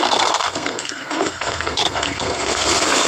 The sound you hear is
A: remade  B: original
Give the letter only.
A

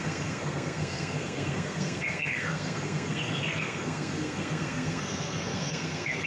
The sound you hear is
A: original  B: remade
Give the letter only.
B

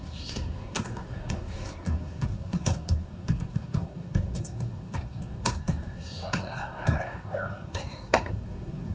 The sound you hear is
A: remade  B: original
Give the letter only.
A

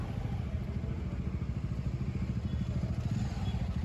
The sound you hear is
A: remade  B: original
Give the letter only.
B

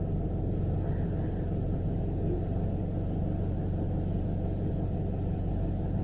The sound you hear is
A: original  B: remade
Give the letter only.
A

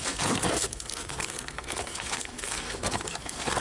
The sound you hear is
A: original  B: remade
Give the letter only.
B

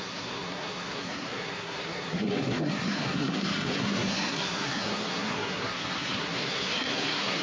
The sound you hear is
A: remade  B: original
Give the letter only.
A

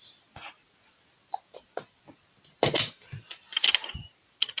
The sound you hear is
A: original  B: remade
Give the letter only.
A